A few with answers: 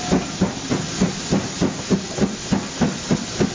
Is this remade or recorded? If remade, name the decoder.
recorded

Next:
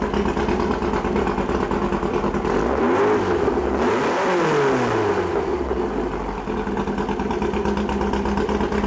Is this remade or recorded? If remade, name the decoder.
recorded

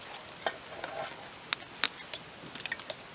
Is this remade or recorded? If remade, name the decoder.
recorded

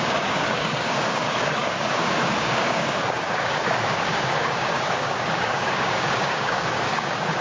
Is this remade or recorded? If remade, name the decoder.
remade, codec, DAC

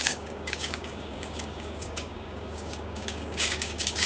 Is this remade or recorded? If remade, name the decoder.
remade, codec, DAC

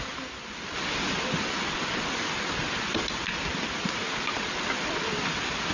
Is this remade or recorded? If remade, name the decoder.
recorded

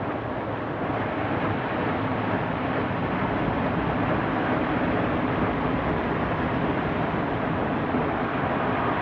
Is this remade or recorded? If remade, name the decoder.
recorded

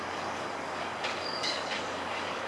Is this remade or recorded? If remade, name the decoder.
remade, codec, DAC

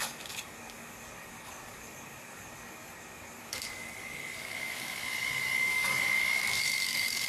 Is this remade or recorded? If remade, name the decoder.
remade, codec, DAC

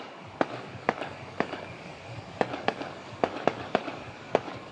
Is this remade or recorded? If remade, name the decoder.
remade, codec, DAC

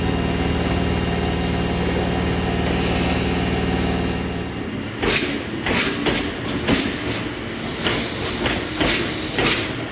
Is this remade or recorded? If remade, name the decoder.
recorded